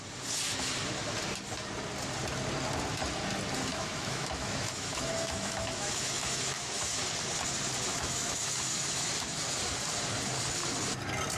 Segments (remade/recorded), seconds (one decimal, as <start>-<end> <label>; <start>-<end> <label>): 0.0-3.7 recorded; 3.7-7.0 remade; 7.0-7.9 recorded; 7.9-9.1 remade; 9.1-11.4 recorded